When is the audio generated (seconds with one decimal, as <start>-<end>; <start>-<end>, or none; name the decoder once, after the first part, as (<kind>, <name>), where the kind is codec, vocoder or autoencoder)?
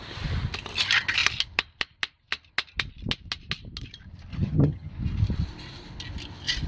4.3-4.9 (vocoder, HiFi-GAN)